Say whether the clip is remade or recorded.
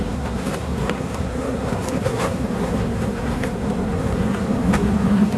remade